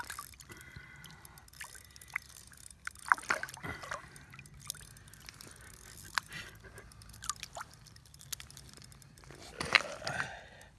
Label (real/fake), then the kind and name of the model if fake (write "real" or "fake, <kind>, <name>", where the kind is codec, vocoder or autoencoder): real